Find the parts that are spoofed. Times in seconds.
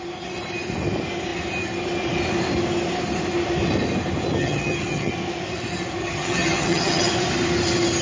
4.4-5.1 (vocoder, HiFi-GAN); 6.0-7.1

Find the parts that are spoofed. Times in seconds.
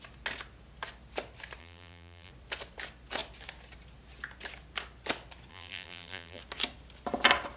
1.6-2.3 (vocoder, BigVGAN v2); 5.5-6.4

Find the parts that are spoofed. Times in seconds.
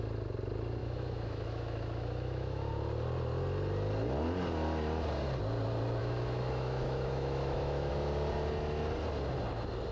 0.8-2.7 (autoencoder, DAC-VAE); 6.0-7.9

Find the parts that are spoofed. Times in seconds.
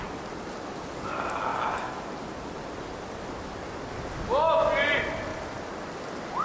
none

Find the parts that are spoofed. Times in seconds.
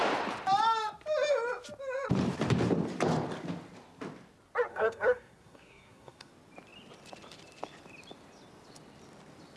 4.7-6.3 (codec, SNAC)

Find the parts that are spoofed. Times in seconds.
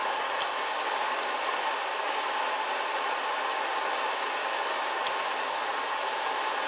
0.5-1.3 (codec, DAC); 1.9-2.4; 4.4-5.0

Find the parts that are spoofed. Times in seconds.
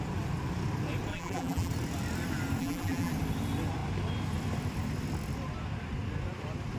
1.1-1.7 (vocoder, BigVGAN v2); 2.6-3.1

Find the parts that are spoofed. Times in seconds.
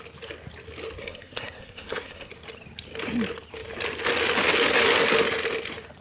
1.0-2.3 (codec, SNAC)